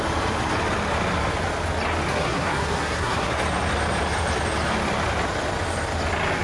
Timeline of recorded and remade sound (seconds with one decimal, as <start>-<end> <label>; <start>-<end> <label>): 0.0-2.1 recorded; 2.1-3.3 remade; 3.3-6.4 recorded

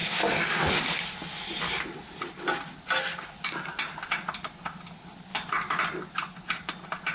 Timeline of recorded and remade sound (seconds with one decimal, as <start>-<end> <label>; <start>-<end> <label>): 0.0-0.6 remade; 0.6-7.1 recorded

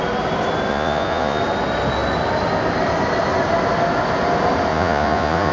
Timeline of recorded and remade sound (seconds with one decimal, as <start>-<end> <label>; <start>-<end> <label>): 0.0-0.7 recorded; 0.7-1.4 remade; 1.4-4.7 recorded; 4.7-5.5 remade

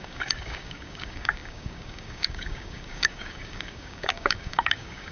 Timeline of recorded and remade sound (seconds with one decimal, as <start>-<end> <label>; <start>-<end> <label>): 0.0-5.1 remade

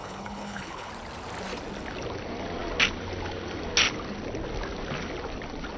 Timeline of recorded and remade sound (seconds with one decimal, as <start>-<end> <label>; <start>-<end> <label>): 0.0-0.9 remade; 0.9-5.8 recorded

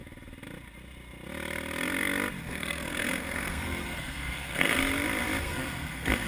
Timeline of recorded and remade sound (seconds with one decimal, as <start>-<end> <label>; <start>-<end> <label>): 0.0-2.4 recorded; 2.4-4.8 remade; 4.8-5.4 recorded; 5.4-6.3 remade

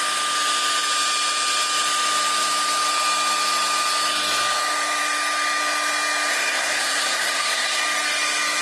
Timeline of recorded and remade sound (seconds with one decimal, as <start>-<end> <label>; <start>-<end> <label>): 0.0-6.3 recorded; 6.3-7.8 remade; 7.8-8.6 recorded

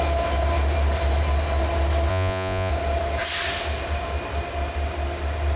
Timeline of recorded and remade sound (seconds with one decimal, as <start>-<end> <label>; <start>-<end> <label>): 0.0-2.1 recorded; 2.1-2.7 remade; 2.7-5.6 recorded